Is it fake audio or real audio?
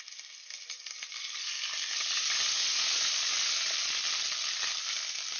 real